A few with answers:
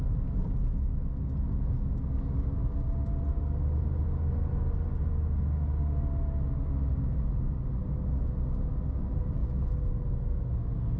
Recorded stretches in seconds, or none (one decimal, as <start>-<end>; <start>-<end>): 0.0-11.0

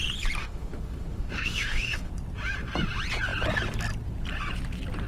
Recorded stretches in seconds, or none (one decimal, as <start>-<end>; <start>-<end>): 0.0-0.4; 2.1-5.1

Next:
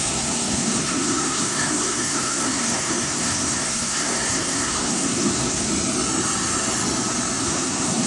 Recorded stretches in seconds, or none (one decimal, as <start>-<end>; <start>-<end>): 5.7-7.4